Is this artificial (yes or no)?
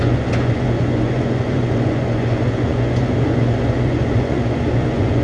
yes